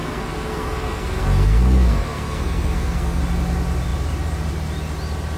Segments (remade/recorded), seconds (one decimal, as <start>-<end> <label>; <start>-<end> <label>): 0.0-3.2 remade; 3.2-5.4 recorded